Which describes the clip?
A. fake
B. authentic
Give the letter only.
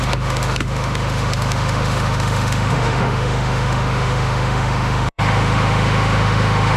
A